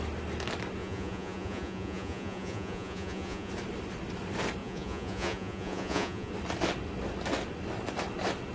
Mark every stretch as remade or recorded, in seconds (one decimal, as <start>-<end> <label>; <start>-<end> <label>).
0.0-0.8 recorded; 0.8-3.5 remade; 3.5-4.6 recorded; 4.6-6.3 remade; 6.3-8.5 recorded

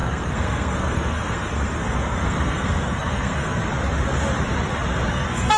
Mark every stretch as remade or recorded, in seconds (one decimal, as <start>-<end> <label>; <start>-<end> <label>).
0.0-3.6 remade; 3.6-5.1 recorded; 5.1-5.6 remade